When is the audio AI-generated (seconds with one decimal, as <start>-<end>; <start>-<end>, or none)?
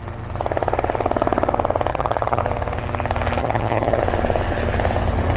1.9-2.4; 3.4-4.0